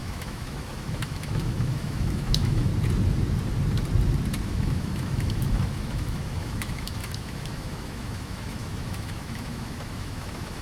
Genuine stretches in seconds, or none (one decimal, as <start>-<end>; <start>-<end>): 2.7-4.4